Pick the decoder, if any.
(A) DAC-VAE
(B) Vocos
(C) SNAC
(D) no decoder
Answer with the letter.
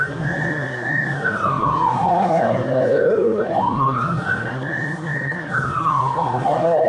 C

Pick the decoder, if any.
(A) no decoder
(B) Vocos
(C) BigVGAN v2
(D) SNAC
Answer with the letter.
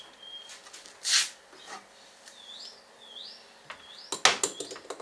A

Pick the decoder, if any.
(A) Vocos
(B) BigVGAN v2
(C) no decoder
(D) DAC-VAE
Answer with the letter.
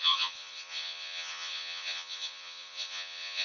A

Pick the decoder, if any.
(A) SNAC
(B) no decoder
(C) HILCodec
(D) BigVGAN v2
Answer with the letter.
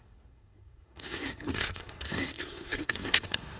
A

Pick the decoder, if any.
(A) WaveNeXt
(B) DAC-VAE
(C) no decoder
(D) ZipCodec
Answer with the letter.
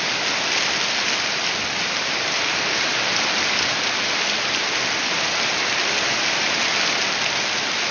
C